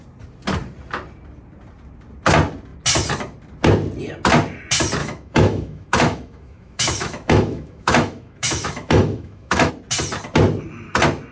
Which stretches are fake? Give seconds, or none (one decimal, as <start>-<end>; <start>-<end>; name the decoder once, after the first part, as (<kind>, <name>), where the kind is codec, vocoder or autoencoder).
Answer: 5.0-9.7 (autoencoder, DAC-VAE)